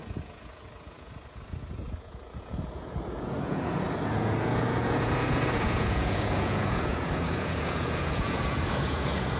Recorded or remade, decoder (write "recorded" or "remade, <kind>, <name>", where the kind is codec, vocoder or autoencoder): remade, vocoder, Vocos